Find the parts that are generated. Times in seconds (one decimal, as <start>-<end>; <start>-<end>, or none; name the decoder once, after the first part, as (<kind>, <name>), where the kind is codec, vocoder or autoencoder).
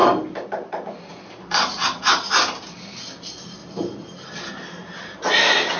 3.6-4.5 (vocoder, BigVGAN v2)